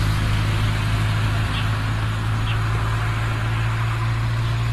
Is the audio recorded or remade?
recorded